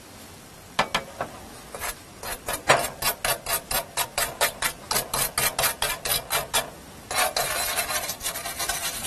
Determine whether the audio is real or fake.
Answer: real